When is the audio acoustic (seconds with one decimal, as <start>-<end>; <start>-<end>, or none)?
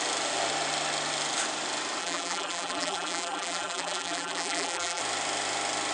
0.0-2.0; 5.0-5.9